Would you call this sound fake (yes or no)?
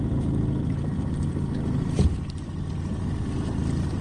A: yes